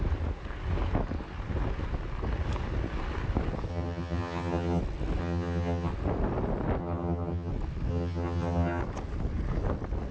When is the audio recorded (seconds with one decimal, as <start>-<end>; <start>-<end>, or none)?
0.0-3.7; 4.8-5.2; 5.9-6.8; 7.5-7.9; 8.8-10.1